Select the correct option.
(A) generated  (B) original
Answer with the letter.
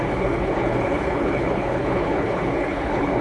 A